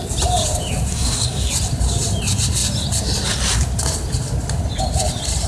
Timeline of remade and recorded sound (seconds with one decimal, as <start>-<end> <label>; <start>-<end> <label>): 0.0-0.9 recorded; 0.9-1.5 remade; 1.5-5.5 recorded